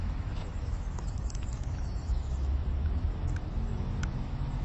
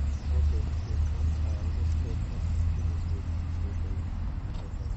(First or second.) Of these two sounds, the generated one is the first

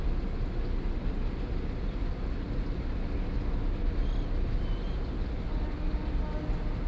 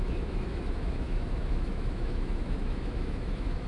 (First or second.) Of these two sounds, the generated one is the second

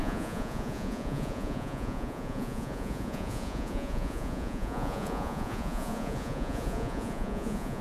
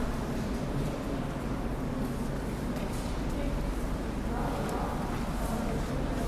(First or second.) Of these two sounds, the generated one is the first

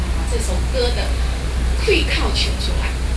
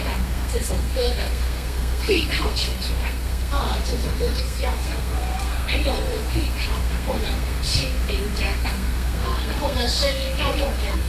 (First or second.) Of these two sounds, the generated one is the second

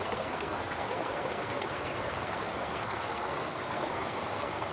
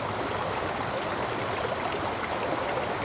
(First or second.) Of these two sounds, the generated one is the first